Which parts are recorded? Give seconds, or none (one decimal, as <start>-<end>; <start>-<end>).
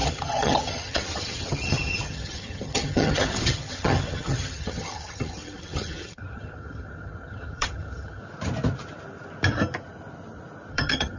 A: 8.2-10.7